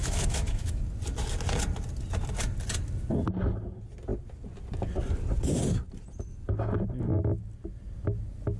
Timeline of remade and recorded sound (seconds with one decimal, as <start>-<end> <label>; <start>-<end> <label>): 0.0-0.8 remade; 0.8-8.6 recorded